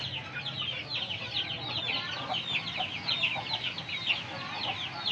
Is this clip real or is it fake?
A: real